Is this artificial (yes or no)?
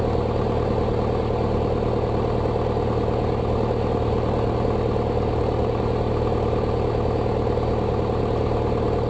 no